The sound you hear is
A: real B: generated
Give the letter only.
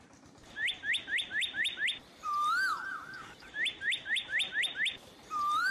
B